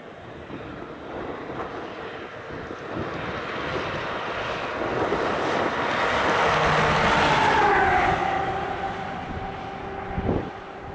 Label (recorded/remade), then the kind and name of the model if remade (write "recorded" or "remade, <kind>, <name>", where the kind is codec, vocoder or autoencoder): recorded